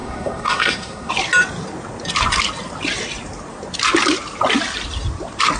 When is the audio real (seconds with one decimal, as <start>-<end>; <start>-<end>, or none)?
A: 1.1-5.6